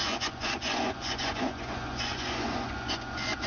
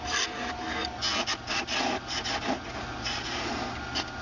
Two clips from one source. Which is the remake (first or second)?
first